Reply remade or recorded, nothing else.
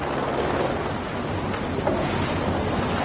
recorded